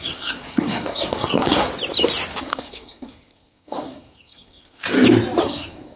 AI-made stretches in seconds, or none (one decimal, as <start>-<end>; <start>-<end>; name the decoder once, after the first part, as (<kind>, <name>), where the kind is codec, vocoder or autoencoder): 0.0-1.7 (codec, SNAC); 2.4-4.8; 5.4-6.0